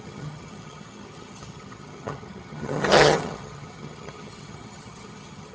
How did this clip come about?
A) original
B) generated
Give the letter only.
B